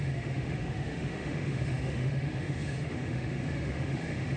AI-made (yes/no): yes